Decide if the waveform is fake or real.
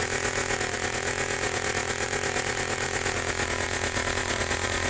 fake